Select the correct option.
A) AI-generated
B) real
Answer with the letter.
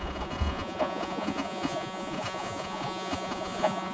A